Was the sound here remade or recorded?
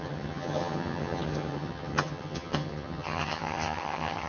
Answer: remade